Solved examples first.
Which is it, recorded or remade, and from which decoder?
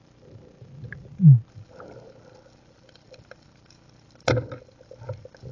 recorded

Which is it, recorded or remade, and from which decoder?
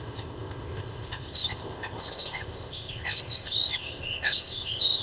remade, codec, ZipCodec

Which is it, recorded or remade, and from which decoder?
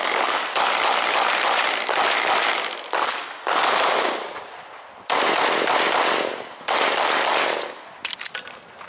recorded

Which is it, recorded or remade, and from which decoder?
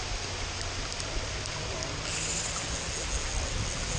recorded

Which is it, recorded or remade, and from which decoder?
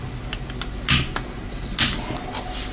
recorded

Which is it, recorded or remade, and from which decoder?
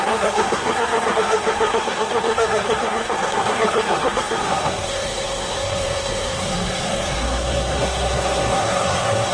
remade, codec, SNAC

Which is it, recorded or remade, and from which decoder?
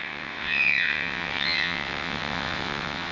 remade, vocoder, WaveNeXt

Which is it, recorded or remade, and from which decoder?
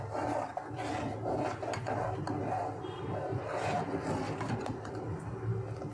recorded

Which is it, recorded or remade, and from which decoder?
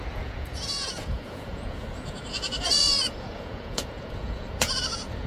remade, vocoder, Vocos